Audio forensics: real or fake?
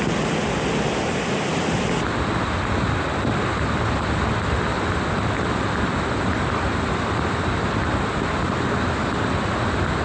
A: real